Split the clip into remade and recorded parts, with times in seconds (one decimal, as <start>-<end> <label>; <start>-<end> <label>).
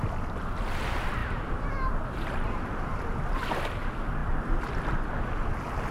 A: 0.0-1.2 recorded; 1.2-3.0 remade; 3.0-5.9 recorded